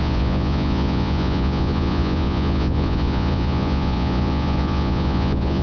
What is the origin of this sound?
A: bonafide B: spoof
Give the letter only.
B